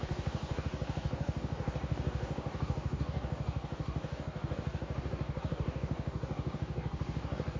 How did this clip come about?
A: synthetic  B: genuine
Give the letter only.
A